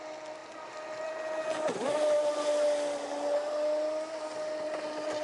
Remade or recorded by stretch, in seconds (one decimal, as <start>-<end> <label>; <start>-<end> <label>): 0.0-5.2 recorded